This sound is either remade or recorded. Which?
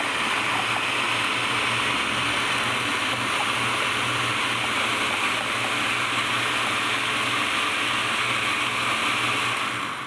recorded